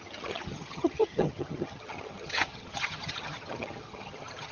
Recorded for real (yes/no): no